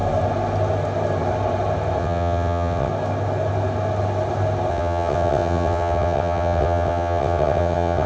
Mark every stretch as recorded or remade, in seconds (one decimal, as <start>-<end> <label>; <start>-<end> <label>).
0.0-2.0 recorded; 2.0-2.9 remade; 2.9-4.7 recorded; 4.7-8.1 remade